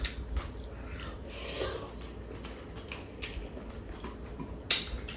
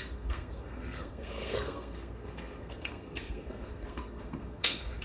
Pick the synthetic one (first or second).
second